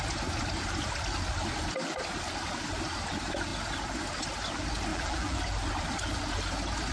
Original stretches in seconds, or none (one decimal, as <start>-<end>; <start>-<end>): 0.0-4.9; 5.4-6.9